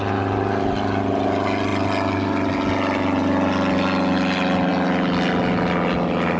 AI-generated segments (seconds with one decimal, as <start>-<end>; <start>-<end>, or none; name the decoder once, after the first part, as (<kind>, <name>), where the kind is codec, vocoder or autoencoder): none